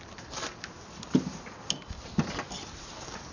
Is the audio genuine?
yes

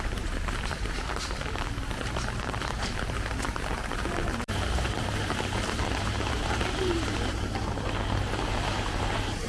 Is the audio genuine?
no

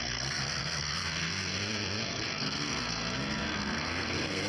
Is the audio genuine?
no